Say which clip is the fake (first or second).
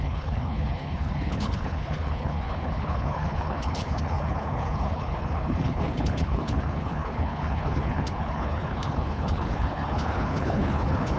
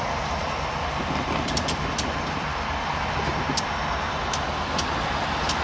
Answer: first